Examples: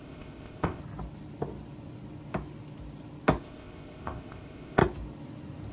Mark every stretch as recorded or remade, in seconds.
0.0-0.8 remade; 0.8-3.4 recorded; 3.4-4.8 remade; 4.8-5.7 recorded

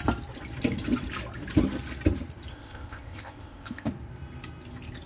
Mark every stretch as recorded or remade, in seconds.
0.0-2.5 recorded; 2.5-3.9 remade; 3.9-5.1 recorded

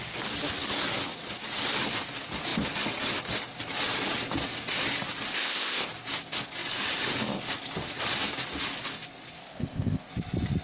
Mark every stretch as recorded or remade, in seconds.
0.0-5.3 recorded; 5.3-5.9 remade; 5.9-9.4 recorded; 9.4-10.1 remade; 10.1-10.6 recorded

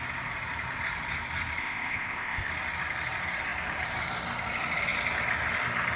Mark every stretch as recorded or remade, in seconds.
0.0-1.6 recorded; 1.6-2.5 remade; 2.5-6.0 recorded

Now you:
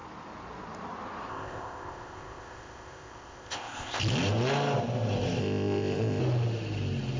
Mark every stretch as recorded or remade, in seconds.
0.0-1.3 recorded; 1.3-4.0 remade; 4.0-5.4 recorded; 5.4-6.2 remade; 6.2-7.2 recorded

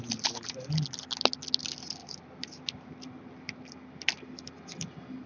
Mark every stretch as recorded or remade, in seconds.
0.0-5.3 recorded